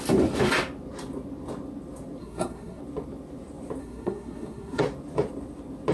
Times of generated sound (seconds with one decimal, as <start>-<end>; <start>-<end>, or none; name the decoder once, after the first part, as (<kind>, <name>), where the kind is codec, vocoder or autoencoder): 2.2-2.8 (codec, SNAC); 3.8-4.8